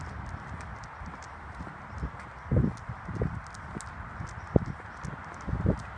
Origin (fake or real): real